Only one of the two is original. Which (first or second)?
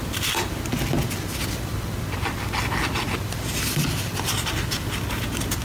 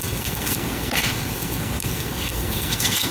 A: first